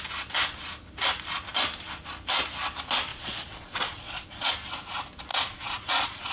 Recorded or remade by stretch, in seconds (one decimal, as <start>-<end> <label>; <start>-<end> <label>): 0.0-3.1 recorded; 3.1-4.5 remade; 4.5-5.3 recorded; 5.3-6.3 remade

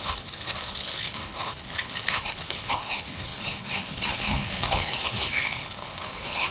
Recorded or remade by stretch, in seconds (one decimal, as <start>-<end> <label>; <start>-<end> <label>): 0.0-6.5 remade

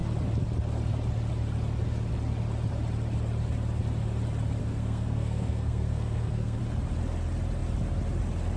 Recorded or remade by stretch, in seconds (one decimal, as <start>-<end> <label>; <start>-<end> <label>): 0.0-4.6 recorded; 4.6-6.6 remade; 6.6-8.6 recorded

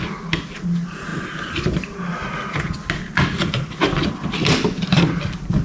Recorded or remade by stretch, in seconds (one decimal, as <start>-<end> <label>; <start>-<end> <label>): 0.0-5.6 recorded